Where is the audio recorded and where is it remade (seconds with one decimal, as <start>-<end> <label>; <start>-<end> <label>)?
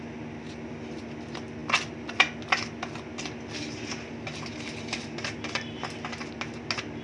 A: 0.0-7.0 recorded